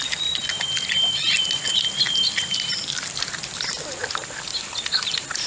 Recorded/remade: remade